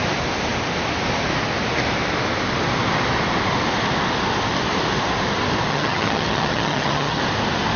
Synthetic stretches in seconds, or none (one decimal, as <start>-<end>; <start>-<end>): 5.7-7.2